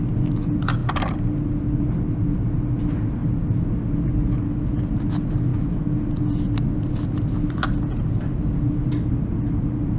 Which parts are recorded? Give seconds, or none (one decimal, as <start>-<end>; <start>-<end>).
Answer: 0.0-10.0